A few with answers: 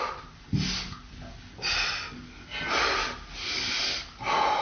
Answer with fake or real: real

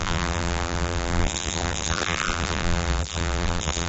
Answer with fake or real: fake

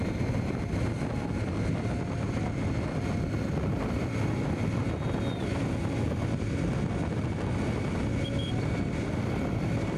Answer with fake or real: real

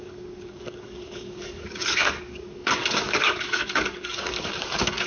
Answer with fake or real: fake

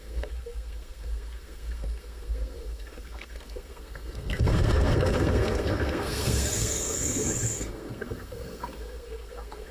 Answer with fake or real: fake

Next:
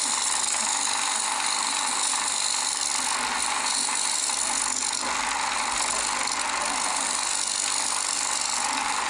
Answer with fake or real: real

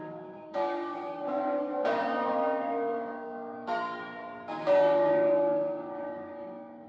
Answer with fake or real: fake